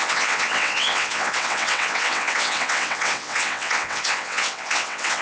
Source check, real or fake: fake